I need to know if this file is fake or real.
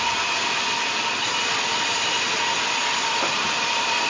real